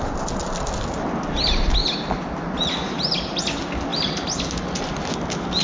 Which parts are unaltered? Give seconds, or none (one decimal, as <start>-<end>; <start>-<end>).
0.0-5.6